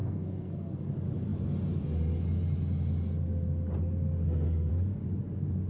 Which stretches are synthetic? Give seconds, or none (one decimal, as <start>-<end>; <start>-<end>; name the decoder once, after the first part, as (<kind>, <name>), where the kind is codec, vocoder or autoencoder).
0.0-0.9 (codec, SNAC)